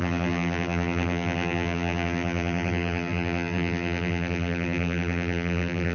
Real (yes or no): no